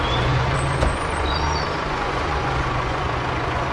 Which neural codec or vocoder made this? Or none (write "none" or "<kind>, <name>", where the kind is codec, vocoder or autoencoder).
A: vocoder, Vocos